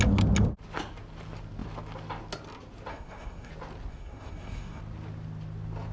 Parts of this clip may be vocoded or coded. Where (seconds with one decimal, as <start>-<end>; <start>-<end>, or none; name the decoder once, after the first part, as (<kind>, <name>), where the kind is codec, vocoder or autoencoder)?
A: 2.9-3.5 (codec, SNAC); 3.9-4.8